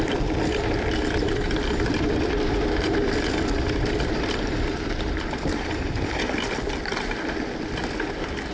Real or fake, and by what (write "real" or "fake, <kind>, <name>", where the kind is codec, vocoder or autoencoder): fake, vocoder, BigVGAN v2